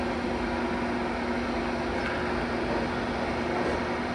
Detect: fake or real real